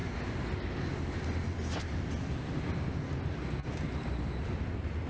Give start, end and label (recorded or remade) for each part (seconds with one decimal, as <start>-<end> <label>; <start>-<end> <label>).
0.0-5.1 recorded